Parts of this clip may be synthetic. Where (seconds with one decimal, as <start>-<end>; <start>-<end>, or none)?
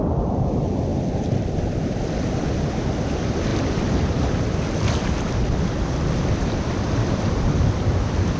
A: 0.0-0.9; 2.2-3.5; 5.0-8.4